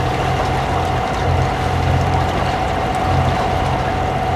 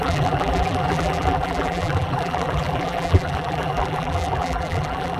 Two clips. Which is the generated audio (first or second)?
second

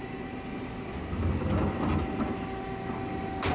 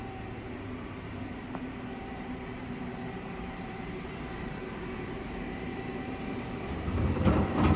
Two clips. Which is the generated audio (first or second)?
second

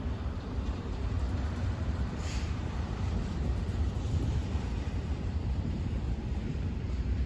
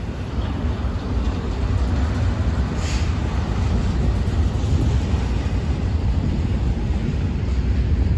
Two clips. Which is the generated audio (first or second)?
first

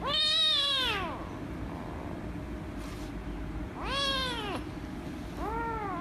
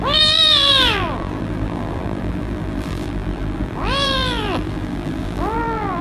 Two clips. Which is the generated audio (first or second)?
second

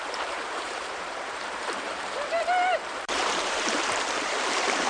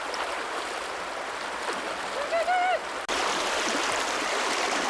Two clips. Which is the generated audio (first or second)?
first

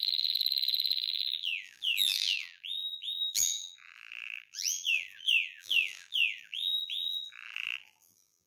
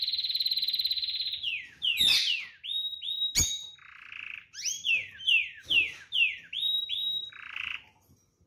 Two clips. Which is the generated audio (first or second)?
first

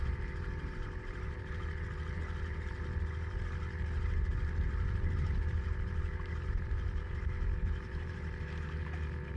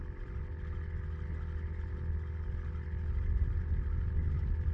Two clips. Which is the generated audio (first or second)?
first